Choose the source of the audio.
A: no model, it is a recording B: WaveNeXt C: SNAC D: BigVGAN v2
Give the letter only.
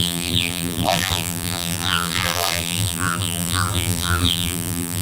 D